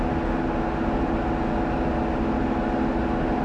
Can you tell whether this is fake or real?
real